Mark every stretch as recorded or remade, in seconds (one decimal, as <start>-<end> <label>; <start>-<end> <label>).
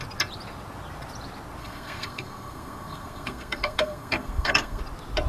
0.0-1.6 recorded; 1.6-4.8 remade; 4.8-5.3 recorded